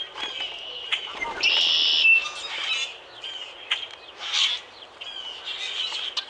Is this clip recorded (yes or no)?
yes